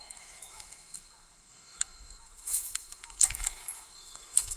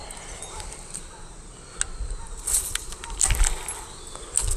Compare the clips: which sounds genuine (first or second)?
second